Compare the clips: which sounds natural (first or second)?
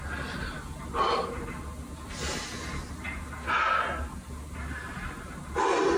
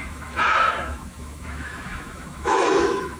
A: first